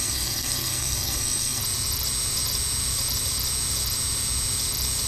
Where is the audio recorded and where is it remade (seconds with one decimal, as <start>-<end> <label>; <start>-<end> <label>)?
0.0-1.6 remade; 1.6-5.1 recorded